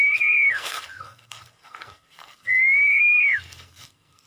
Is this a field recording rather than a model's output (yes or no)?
no